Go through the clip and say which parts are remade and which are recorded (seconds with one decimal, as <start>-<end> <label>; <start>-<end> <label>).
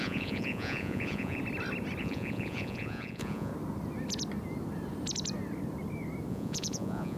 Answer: 0.0-1.4 remade; 1.4-2.0 recorded; 2.0-3.5 remade; 3.5-6.3 recorded; 6.3-7.2 remade